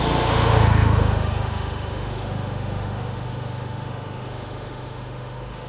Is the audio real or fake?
fake